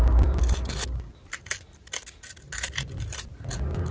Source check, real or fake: real